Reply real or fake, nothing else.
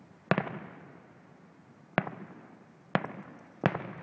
real